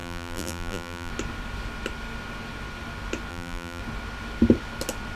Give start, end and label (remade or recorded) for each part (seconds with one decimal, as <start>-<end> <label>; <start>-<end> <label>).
0.0-1.1 remade; 1.1-3.3 recorded; 3.3-3.8 remade; 3.8-5.2 recorded